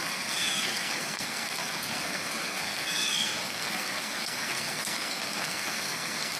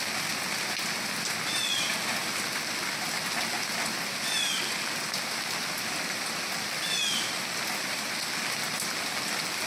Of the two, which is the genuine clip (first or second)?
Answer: second